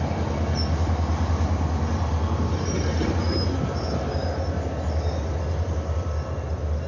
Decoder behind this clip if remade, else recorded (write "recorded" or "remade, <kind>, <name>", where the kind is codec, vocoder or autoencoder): recorded